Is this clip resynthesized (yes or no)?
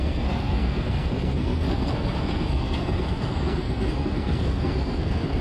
yes